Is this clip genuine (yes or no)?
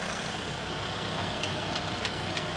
no